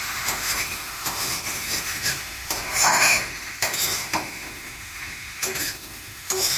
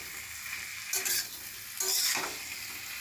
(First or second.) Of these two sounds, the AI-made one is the first